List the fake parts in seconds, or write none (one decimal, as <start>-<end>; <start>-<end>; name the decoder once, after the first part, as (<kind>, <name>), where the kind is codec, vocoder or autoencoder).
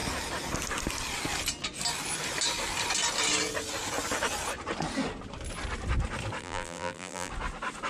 6.4-7.3 (vocoder, BigVGAN v2)